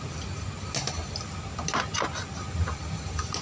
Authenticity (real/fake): real